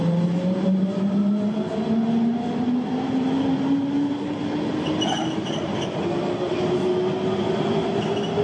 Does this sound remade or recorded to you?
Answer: recorded